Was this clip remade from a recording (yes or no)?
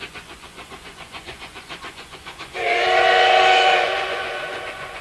yes